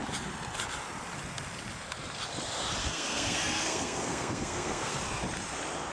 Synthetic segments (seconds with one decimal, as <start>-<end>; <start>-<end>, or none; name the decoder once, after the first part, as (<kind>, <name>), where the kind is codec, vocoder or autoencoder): 2.8-5.0 (codec, SNAC)